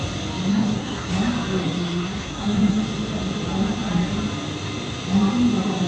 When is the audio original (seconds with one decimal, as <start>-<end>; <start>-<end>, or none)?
0.0-0.5; 1.1-1.6; 2.8-5.9